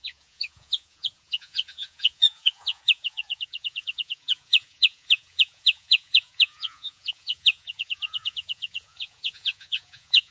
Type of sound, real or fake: fake